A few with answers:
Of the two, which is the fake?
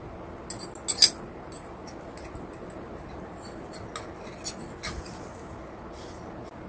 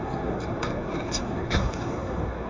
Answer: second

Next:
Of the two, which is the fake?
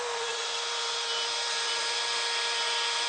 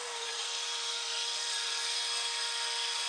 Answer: second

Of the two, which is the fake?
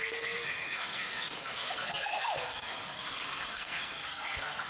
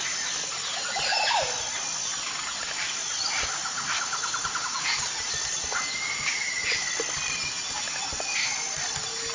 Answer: first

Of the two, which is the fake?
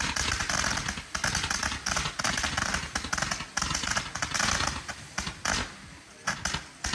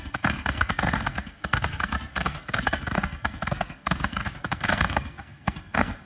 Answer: second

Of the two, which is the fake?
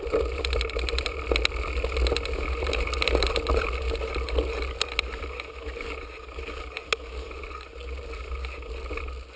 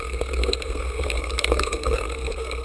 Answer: second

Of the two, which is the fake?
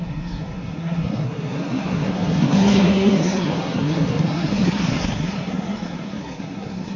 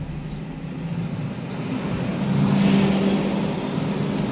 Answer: first